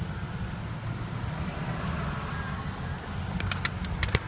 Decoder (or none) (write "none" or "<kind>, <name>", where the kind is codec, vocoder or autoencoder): none